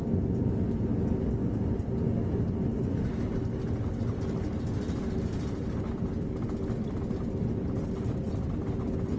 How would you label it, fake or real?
real